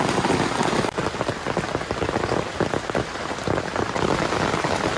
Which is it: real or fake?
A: real